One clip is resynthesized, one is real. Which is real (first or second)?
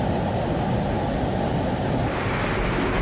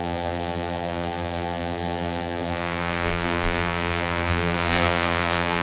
first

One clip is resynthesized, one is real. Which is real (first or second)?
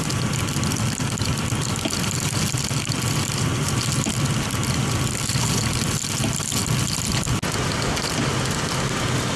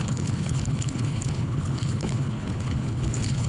first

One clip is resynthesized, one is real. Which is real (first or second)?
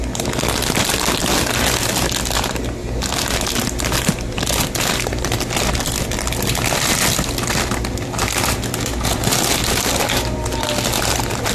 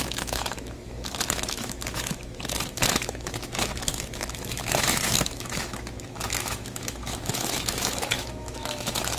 first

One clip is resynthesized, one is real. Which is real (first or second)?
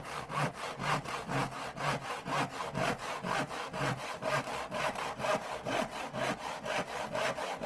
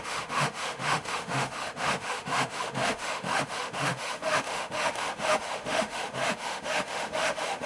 first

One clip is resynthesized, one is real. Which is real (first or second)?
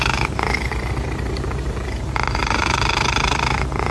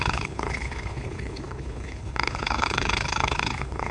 first